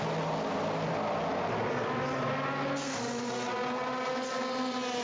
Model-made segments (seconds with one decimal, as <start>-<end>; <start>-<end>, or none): none